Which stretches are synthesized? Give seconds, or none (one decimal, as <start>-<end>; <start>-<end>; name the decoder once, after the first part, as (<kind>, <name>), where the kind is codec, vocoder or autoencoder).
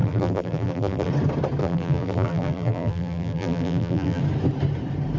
0.0-1.1 (vocoder, BigVGAN v2); 1.6-4.2